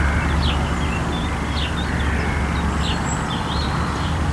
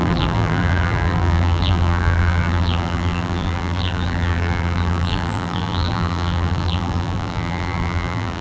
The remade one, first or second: second